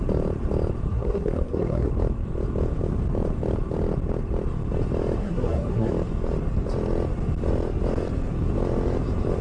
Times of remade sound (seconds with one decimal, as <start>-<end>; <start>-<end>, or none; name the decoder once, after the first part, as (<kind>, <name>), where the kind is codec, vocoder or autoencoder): 0.9-1.9 (codec, SNAC); 5.2-5.9